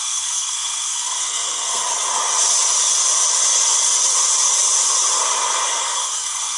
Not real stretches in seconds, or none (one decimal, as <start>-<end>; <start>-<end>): 0.0-1.8; 5.8-6.6